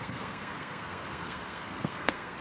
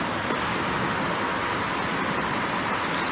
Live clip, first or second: second